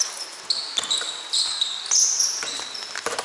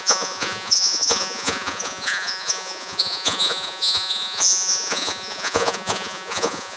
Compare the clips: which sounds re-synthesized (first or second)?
second